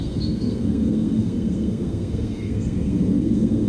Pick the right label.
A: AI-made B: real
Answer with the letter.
A